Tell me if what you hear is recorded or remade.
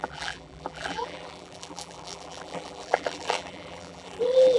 remade